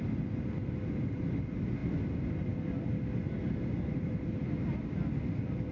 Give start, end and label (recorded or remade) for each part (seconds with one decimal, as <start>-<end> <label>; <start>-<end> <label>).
0.0-5.7 recorded